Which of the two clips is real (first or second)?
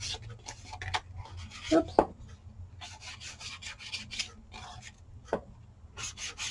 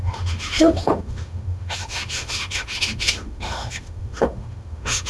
first